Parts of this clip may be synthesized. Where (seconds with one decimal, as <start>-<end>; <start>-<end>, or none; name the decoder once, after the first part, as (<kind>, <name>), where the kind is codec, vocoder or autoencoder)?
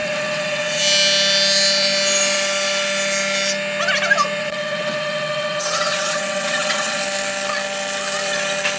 0.0-0.8 (vocoder, WaveNeXt); 4.4-7.0